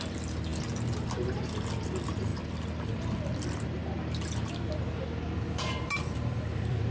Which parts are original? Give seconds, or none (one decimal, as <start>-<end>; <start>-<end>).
0.5-1.0; 2.3-2.9; 3.8-5.4